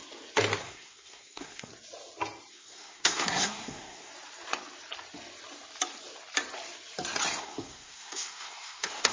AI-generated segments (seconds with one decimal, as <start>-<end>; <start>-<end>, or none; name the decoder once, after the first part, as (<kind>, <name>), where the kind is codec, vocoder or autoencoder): 0.6-1.7 (codec, SNAC); 2.5-4.1; 7.4-9.1